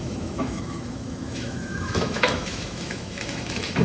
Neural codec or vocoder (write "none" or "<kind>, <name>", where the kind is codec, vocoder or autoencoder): autoencoder, DAC-VAE